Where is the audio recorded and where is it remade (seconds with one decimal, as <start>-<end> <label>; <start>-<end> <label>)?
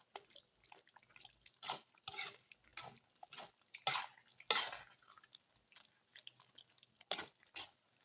0.0-8.0 recorded